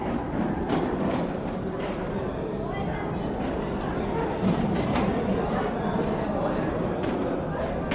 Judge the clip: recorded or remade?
recorded